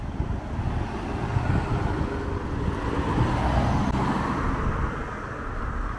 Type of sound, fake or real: real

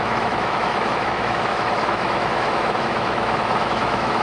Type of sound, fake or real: fake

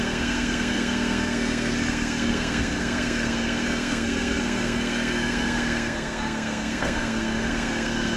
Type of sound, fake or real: fake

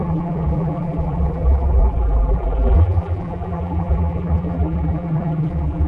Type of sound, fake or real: fake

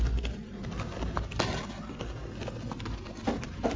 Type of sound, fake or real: real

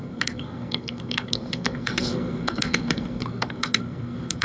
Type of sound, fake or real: fake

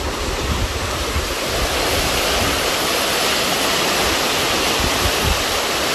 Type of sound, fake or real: real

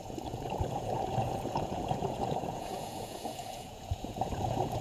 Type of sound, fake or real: fake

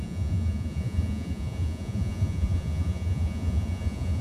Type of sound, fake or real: fake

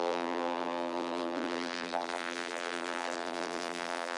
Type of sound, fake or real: fake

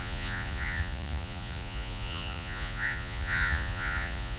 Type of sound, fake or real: fake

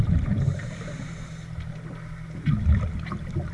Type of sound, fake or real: real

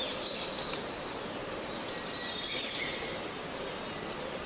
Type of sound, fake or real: real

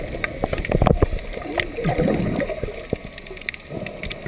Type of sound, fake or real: real